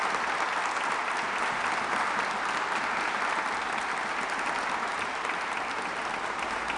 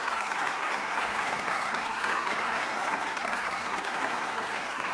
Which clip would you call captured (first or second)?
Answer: first